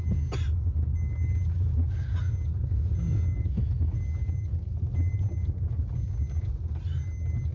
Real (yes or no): yes